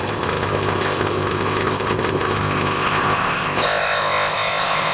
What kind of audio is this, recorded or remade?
remade